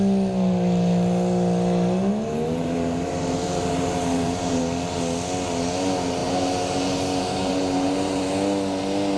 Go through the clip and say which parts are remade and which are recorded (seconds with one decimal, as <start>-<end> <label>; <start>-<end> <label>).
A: 0.0-2.6 recorded; 2.6-4.6 remade; 4.6-6.2 recorded; 6.2-8.2 remade; 8.2-9.2 recorded